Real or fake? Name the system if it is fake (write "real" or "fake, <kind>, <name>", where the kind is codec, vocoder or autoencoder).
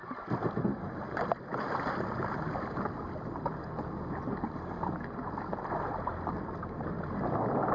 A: real